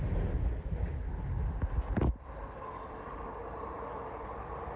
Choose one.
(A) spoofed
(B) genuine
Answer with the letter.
B